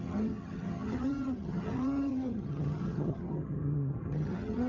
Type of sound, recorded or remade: remade